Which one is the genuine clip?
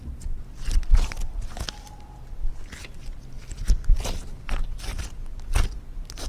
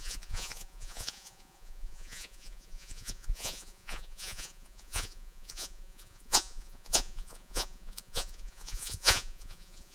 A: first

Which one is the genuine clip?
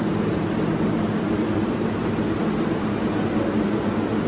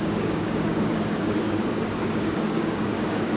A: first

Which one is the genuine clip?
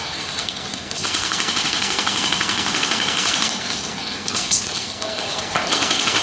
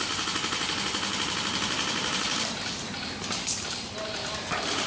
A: second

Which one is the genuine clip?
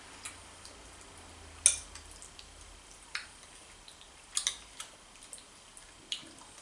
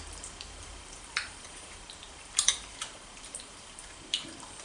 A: first